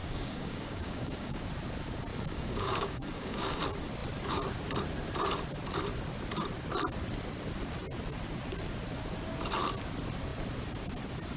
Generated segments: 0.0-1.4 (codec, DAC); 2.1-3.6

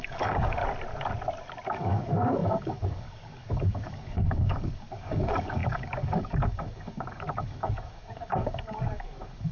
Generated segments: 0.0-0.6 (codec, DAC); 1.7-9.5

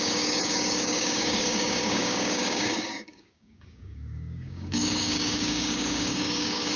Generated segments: 0.0-6.8 (codec, DAC)